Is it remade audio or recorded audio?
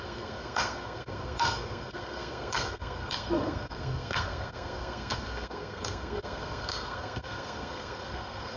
remade